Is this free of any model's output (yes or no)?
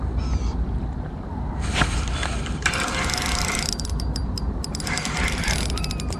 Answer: no